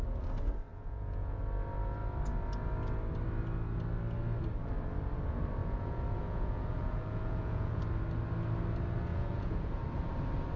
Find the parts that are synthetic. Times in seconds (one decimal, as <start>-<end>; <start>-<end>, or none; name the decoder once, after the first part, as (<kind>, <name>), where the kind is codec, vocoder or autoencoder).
0.7-1.4 (vocoder, Vocos); 5.6-7.8; 9.1-9.8